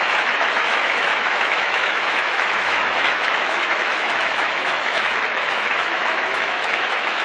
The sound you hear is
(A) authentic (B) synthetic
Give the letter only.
B